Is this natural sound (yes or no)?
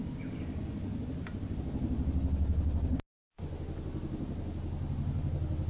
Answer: yes